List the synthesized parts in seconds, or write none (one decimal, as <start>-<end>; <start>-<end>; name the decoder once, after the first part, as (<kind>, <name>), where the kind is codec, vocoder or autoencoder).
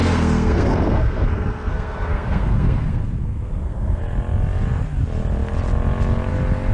0.0-4.0 (codec, SNAC)